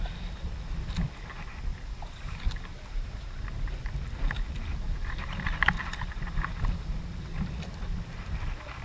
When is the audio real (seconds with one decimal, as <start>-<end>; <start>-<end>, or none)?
0.0-1.7; 3.7-4.7; 6.9-8.8